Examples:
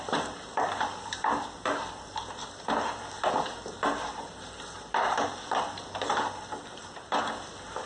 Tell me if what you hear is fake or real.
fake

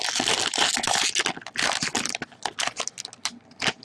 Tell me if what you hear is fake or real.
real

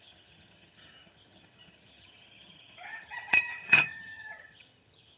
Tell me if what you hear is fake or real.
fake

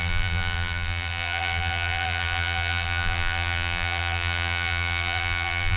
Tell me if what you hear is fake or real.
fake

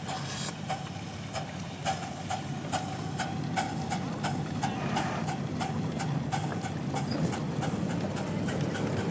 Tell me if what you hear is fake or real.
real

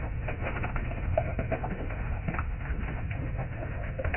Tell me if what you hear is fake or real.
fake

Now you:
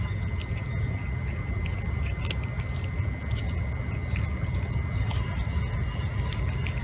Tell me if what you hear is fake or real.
real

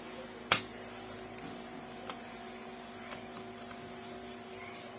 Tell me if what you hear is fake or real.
real